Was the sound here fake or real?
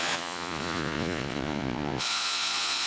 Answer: fake